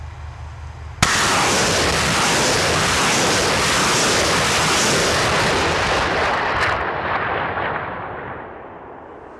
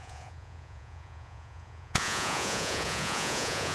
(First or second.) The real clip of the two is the first